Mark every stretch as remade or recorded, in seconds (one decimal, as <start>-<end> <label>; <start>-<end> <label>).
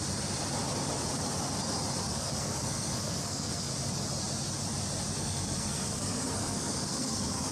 0.0-2.1 recorded; 2.1-3.7 remade; 3.7-5.2 recorded; 5.2-7.5 remade